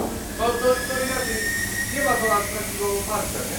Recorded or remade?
recorded